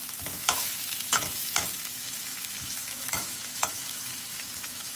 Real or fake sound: fake